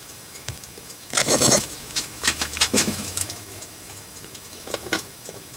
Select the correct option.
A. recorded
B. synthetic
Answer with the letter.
B